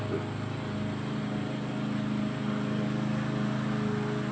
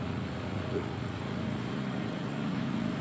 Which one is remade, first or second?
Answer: second